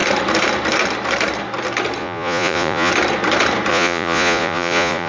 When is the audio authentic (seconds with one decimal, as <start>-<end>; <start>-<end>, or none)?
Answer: 0.0-2.0; 2.9-3.7